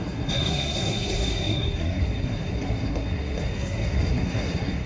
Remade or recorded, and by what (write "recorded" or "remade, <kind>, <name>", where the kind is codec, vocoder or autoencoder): remade, codec, SNAC